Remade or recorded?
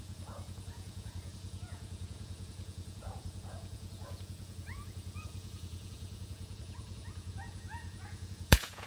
remade